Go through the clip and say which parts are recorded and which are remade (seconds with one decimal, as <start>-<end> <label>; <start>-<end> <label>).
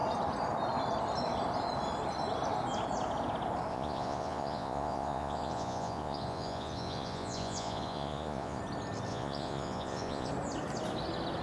0.0-3.7 recorded; 3.7-8.6 remade; 8.6-9.1 recorded; 9.1-10.3 remade; 10.3-11.4 recorded